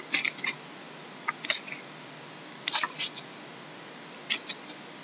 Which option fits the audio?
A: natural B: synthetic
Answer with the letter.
A